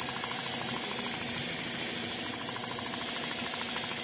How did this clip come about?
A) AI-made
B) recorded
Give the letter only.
B